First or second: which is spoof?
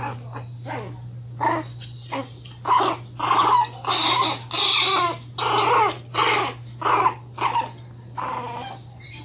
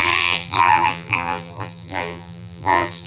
second